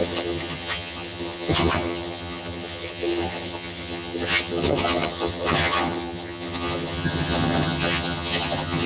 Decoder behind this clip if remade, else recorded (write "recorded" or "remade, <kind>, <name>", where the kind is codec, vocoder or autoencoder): remade, vocoder, HiFi-GAN